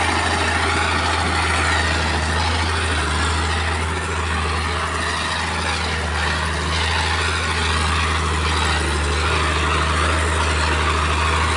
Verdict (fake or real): real